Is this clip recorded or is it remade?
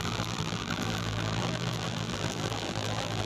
remade